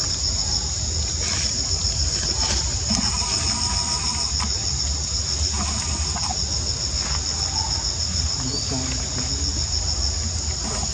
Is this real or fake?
real